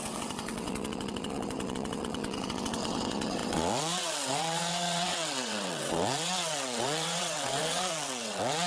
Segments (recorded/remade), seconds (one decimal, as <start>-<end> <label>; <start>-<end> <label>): 0.0-8.7 remade

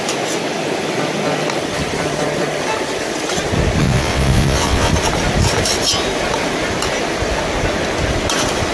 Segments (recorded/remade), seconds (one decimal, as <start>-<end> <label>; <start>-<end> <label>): 0.0-3.8 recorded; 3.8-4.9 remade; 4.9-8.7 recorded

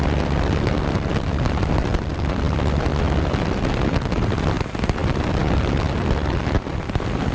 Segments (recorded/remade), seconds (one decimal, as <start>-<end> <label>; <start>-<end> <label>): 0.0-7.3 recorded